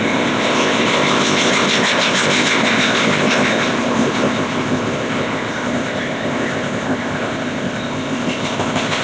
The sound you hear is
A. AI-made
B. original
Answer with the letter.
A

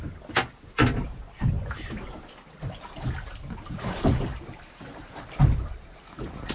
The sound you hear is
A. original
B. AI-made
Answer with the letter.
A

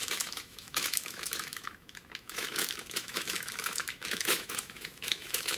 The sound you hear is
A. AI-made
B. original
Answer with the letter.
A